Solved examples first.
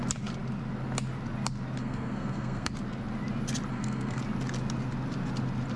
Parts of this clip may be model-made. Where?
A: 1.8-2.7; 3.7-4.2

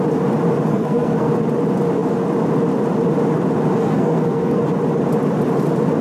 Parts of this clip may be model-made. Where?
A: 0.7-1.3; 3.8-4.6

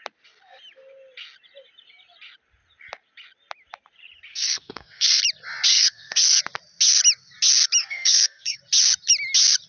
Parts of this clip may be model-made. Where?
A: 4.3-5.2; 5.7-6.4; 7.8-8.6

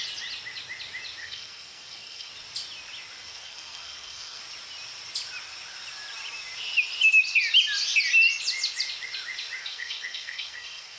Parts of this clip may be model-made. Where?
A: 1.2-2.3; 3.2-4.4; 9.6-11.0

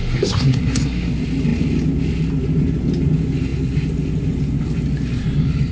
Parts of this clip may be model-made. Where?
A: 0.0-1.1

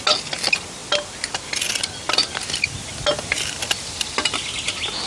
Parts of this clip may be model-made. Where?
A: none

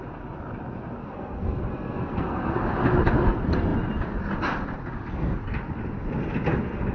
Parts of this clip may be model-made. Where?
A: 1.0-2.6

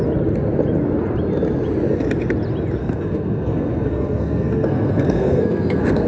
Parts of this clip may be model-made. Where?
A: 2.8-6.1